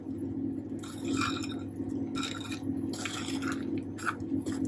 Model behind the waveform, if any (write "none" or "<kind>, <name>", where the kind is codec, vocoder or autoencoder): none